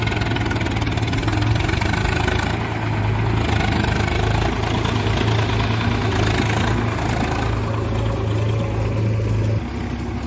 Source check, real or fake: real